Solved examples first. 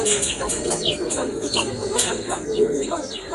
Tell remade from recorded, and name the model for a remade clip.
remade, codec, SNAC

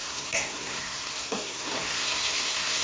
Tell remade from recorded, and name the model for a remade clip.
remade, codec, SNAC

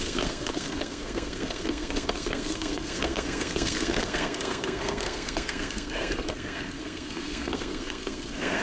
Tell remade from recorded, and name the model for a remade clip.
remade, codec, SNAC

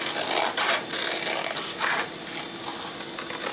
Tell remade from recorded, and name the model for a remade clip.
recorded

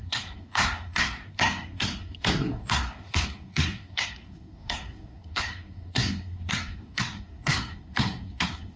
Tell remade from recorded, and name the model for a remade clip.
remade, codec, SNAC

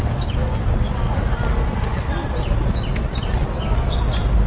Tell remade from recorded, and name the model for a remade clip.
recorded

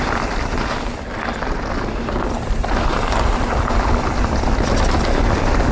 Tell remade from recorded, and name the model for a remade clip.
recorded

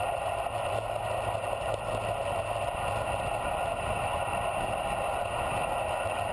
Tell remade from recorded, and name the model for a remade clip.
recorded